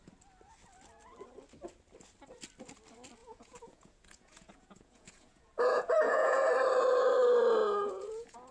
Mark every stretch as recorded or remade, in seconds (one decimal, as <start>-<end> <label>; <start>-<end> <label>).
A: 0.0-3.2 recorded; 3.2-6.5 remade; 6.5-7.6 recorded; 7.6-8.5 remade